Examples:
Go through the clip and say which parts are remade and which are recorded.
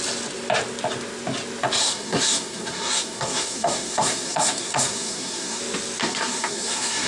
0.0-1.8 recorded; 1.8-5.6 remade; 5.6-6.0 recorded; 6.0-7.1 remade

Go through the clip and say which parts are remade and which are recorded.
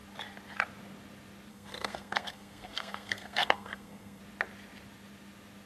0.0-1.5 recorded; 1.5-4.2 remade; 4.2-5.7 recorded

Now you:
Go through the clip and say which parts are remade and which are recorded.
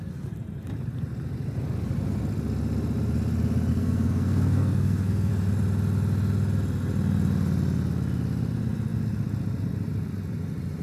0.0-3.7 recorded; 3.7-5.3 remade; 5.3-10.8 recorded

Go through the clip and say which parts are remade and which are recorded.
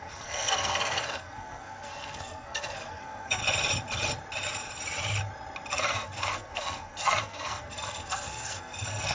0.0-3.4 remade; 3.4-5.7 recorded; 5.7-9.1 remade